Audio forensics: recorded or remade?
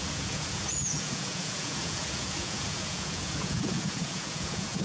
remade